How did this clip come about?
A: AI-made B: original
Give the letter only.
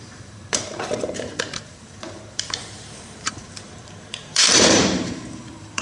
A